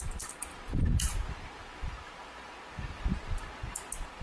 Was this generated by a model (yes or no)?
no